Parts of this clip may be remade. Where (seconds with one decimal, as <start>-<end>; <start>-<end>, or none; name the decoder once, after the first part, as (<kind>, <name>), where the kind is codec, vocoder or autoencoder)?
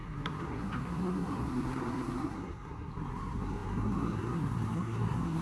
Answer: 0.0-5.4 (codec, SNAC)